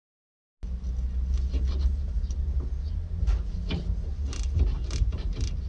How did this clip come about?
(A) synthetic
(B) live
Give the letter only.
B